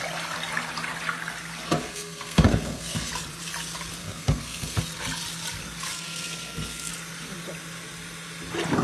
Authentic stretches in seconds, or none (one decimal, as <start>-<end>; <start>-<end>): 0.0-1.8; 3.1-4.0; 4.8-5.9; 6.9-8.8